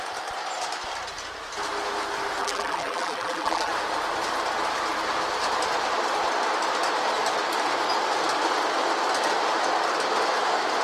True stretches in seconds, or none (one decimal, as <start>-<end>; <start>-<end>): 0.0-2.4; 3.7-10.8